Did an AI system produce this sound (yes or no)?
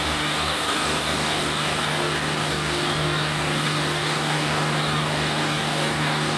yes